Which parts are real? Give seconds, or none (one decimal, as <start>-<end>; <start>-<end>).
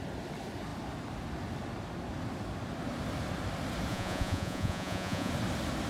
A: 0.0-3.9; 5.3-5.9